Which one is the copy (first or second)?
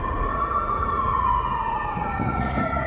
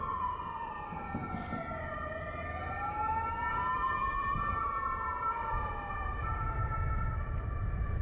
first